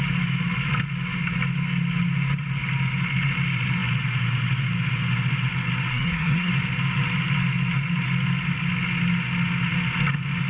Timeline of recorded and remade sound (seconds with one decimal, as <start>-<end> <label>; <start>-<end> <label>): 0.0-5.9 recorded; 5.9-6.5 remade; 6.5-10.5 recorded